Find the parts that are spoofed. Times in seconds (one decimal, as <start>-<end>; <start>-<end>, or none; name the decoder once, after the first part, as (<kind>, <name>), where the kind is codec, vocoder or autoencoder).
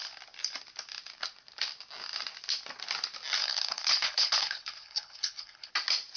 3.4-5.7 (codec, HILCodec)